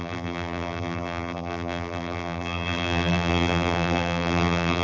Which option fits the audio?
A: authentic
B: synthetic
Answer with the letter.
B